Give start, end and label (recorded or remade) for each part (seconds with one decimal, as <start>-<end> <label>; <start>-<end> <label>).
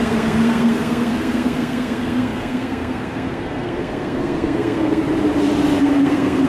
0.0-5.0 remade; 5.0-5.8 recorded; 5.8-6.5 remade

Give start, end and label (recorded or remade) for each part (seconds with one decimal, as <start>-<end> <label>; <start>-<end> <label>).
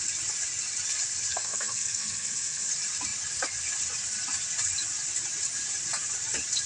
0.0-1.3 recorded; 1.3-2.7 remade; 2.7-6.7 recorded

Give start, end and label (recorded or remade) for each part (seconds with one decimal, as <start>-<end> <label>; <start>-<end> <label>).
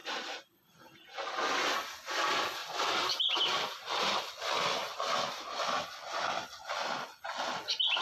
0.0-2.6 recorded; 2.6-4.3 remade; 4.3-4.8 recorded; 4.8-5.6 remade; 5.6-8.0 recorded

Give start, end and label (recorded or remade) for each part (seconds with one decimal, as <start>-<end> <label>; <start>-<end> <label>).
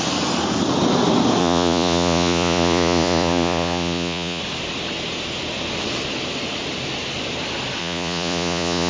0.0-1.4 recorded; 1.4-4.4 remade; 4.4-7.8 recorded; 7.8-8.9 remade